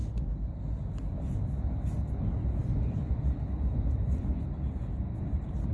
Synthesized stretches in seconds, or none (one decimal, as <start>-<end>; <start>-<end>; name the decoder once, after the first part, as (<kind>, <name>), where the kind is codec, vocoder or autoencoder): 3.4-4.3 (vocoder, BigVGAN v2); 5.2-5.7